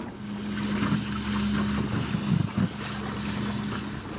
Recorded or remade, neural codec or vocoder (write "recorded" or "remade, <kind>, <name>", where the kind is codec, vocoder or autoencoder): recorded